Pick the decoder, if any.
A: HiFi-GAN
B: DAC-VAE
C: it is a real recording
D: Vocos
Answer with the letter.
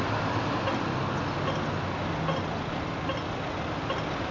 C